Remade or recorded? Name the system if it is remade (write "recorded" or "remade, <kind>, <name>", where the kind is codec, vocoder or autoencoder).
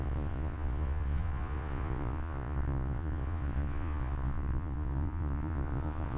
remade, vocoder, Vocos